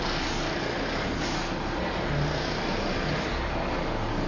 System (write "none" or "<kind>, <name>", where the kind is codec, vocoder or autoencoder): none